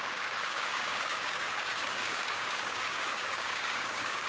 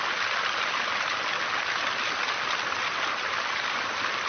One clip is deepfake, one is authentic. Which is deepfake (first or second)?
first